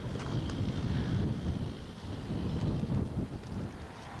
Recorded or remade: recorded